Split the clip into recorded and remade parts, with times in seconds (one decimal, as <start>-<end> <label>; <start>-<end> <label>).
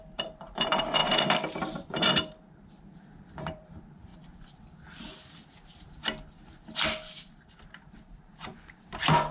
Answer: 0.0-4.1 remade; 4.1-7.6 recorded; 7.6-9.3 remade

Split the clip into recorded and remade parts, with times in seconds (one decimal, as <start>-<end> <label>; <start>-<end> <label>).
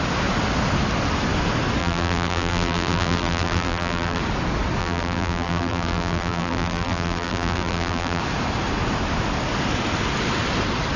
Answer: 0.0-1.8 recorded; 1.8-4.2 remade; 4.2-4.8 recorded; 4.8-8.2 remade; 8.2-11.0 recorded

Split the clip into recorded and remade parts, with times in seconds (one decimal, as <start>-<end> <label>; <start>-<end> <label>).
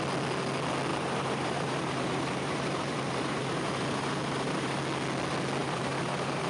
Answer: 0.0-0.9 recorded; 0.9-4.8 remade; 4.8-5.6 recorded; 5.6-6.5 remade